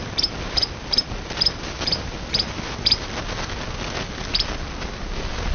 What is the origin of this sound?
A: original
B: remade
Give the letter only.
A